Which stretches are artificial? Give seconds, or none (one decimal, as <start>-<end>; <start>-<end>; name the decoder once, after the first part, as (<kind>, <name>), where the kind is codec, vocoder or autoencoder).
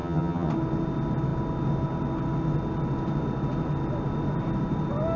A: 0.0-0.5 (vocoder, HiFi-GAN)